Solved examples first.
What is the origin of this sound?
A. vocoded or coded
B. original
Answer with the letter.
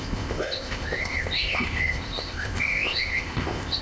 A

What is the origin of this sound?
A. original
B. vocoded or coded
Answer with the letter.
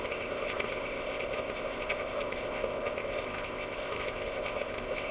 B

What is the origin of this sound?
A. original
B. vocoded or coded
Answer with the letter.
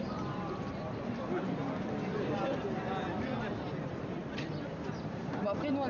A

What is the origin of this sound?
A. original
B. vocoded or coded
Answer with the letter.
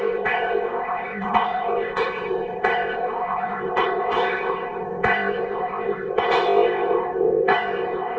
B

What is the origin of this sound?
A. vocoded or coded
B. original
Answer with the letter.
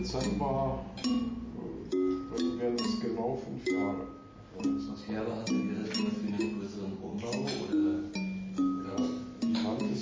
B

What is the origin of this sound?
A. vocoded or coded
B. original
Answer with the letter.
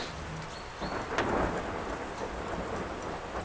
B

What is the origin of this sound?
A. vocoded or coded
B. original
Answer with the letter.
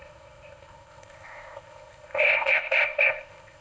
A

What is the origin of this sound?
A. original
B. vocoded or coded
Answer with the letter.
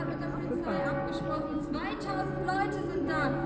A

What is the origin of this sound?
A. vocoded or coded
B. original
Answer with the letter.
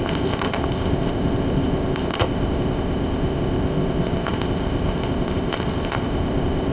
A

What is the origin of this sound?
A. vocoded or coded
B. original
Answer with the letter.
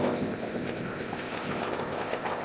A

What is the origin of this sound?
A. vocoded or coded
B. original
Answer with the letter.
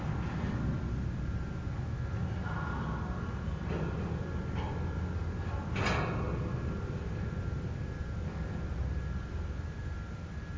B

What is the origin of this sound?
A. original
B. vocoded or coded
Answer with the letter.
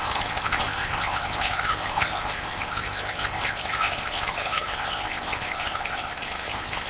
B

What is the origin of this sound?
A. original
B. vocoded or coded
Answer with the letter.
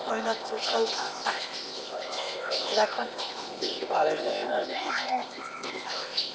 B